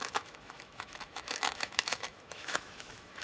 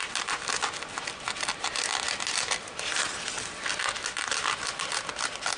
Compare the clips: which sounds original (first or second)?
second